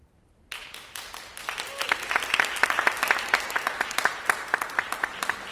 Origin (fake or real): real